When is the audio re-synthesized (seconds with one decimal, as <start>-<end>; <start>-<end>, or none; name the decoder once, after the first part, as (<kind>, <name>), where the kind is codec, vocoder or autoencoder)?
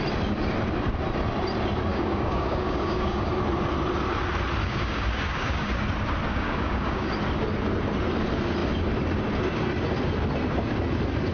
1.9-3.3 (codec, DAC); 4.6-5.7; 6.3-7.1